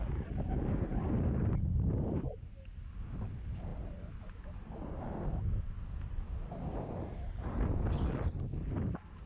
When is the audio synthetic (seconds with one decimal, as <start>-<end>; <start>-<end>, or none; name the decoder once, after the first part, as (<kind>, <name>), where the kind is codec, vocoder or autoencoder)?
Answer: none